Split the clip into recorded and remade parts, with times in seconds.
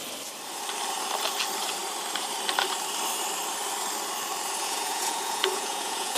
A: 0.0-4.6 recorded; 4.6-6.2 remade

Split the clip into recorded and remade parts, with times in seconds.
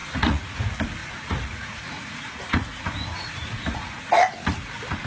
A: 0.0-0.6 remade; 0.6-1.0 recorded; 1.0-4.1 remade; 4.1-5.1 recorded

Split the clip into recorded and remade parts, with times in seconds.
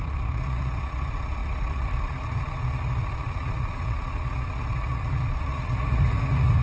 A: 0.0-6.6 remade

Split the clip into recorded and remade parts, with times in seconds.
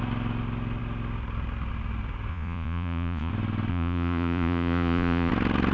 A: 0.0-2.3 recorded; 2.3-3.3 remade; 3.3-3.7 recorded; 3.7-5.3 remade; 5.3-5.7 recorded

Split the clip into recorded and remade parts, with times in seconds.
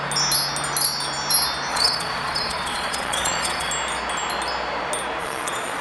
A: 0.0-1.7 recorded; 1.7-3.7 remade; 3.7-5.2 recorded; 5.2-5.8 remade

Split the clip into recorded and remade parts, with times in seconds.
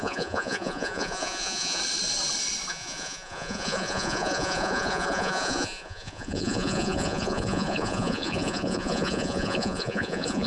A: 0.0-1.8 remade; 1.8-2.7 recorded; 2.7-10.5 remade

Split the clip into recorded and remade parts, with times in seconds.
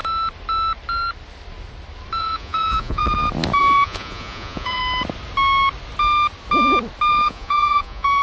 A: 0.0-2.2 recorded; 2.2-3.0 remade; 3.0-3.6 recorded; 3.6-4.8 remade; 4.8-7.1 recorded; 7.1-8.2 remade